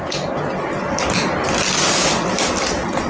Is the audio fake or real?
real